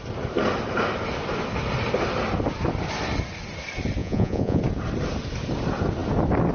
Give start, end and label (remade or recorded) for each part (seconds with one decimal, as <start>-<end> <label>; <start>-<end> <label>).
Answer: 0.0-4.0 recorded; 4.0-4.6 remade; 4.6-6.5 recorded